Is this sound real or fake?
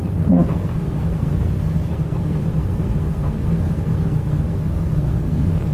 fake